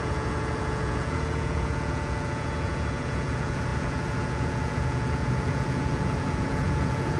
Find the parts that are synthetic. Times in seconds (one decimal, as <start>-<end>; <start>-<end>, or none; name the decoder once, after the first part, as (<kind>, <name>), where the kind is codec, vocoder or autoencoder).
0.0-7.2 (vocoder, Vocos)